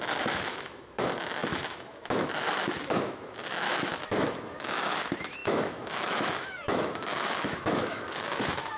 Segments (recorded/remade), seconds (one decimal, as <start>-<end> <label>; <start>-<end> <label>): 0.0-8.8 remade